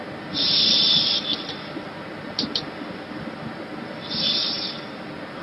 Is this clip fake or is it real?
real